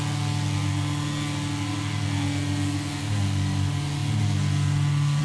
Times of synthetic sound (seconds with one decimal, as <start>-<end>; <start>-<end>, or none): none